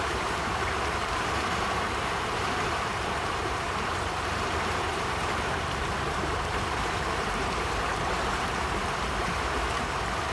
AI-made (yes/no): yes